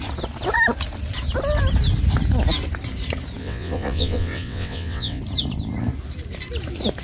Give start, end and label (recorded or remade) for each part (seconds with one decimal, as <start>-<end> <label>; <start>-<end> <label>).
0.0-3.4 recorded; 3.4-5.2 remade; 5.2-7.0 recorded